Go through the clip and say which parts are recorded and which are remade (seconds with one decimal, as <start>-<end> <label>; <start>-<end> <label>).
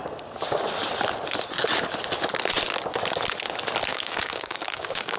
0.0-3.9 recorded; 3.9-5.2 remade